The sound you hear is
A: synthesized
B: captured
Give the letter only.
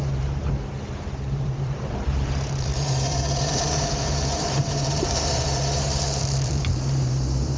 A